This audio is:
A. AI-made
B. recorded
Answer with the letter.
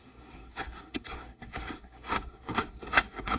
A